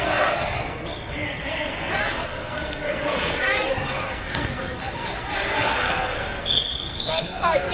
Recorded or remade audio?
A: remade